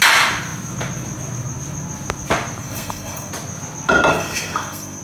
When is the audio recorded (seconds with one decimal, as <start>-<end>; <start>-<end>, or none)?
0.0-2.6; 3.3-4.1